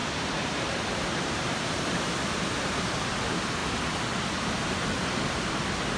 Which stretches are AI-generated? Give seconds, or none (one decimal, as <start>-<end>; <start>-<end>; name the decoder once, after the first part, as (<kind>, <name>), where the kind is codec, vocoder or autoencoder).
0.0-3.1 (vocoder, BigVGAN v2)

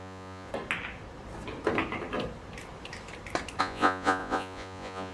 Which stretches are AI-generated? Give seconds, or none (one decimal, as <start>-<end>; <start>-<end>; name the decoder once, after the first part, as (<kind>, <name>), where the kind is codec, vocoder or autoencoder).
0.0-0.5 (vocoder, Vocos); 3.6-5.1

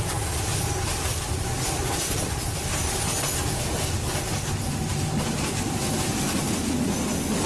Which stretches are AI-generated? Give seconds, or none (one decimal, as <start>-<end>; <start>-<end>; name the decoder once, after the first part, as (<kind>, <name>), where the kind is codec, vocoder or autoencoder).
1.1-2.9 (vocoder, BigVGAN v2); 4.9-5.9

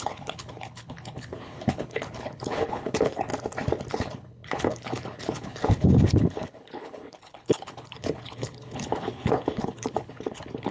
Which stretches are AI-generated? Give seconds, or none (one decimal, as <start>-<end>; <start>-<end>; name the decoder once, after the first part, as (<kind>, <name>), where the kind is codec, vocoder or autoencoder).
0.0-3.3 (codec, HILCodec); 3.9-10.7

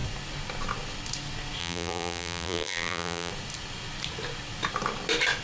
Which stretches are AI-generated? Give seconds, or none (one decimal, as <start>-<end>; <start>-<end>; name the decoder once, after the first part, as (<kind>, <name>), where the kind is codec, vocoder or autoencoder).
1.6-3.3 (vocoder, BigVGAN v2)

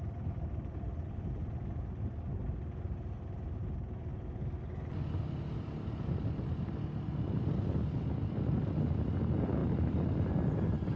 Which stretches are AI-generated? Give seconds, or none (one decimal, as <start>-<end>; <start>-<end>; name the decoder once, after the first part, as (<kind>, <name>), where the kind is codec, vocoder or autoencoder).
0.0-1.8 (vocoder, BigVGAN v2); 9.6-10.3

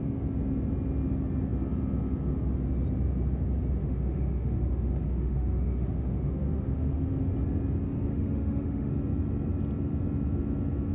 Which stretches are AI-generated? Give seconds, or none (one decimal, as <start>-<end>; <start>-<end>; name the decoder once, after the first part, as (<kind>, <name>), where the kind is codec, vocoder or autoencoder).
3.8-7.2 (autoencoder, DAC-VAE); 8.1-8.9

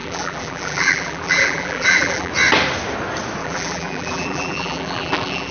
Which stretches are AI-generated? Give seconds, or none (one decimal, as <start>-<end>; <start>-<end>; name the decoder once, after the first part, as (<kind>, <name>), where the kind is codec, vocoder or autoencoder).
0.0-2.3 (vocoder, BigVGAN v2); 3.4-5.5